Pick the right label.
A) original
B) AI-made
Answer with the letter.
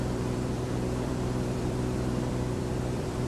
B